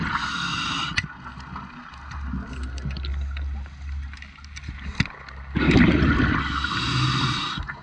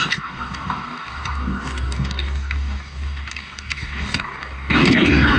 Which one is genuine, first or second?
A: first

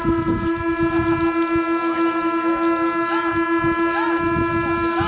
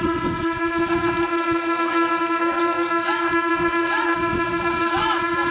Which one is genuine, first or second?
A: first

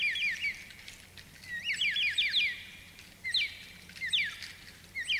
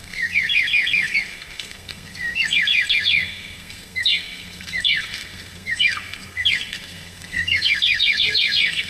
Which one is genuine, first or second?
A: first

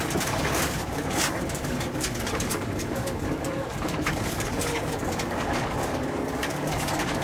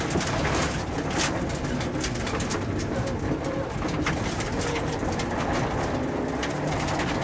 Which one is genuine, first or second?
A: second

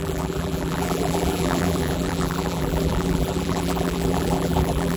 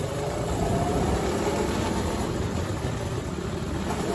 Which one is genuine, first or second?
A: second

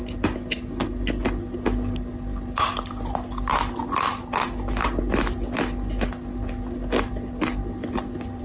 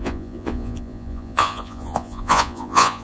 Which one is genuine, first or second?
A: first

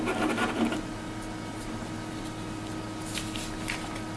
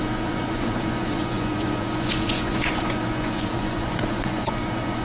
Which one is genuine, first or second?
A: first